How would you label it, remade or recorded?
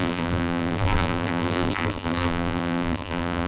remade